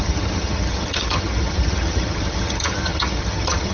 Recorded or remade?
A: remade